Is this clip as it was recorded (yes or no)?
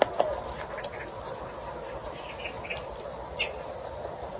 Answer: yes